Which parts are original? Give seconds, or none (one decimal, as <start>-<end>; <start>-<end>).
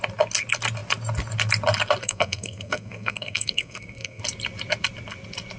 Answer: 0.0-2.0; 4.2-5.6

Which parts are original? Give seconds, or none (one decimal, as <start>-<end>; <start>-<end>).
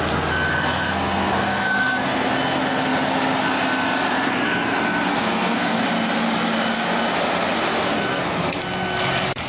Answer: 0.0-0.5; 2.3-5.1; 5.8-8.1; 8.6-9.5